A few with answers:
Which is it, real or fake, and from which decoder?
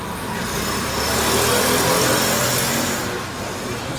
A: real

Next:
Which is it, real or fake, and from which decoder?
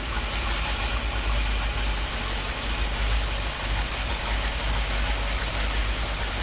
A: real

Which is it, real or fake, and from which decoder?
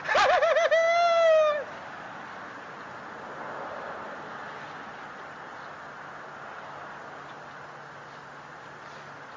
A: real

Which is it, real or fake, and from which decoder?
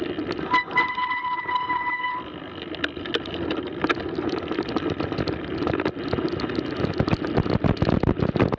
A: real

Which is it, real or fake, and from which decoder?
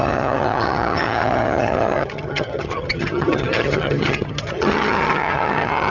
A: fake, vocoder, HiFi-GAN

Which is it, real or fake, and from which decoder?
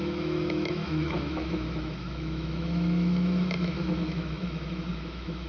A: fake, autoencoder, DAC-VAE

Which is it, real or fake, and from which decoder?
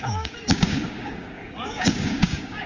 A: fake, codec, DAC